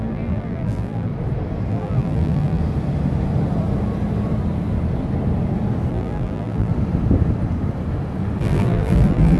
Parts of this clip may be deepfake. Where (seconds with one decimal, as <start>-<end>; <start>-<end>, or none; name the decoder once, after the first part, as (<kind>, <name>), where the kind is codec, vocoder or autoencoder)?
0.0-1.1 (vocoder, BigVGAN v2); 1.7-2.6; 5.9-6.7; 8.4-9.4